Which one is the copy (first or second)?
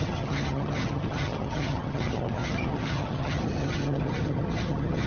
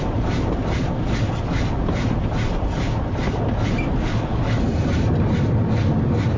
first